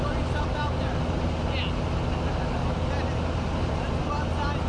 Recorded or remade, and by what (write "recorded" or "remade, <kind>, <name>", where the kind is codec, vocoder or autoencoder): recorded